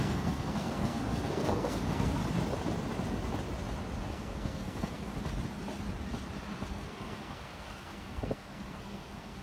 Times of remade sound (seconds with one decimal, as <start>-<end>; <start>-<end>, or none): 0.0-2.2; 4.1-5.1; 6.7-9.4